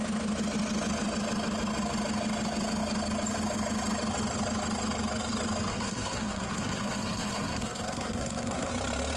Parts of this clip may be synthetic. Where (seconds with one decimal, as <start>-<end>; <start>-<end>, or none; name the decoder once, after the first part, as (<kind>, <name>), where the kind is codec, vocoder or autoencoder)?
5.7-8.7 (codec, SNAC)